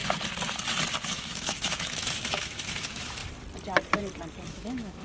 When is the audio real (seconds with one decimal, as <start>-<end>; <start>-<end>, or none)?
0.0-1.1; 3.2-4.5